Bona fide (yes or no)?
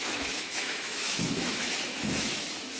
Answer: no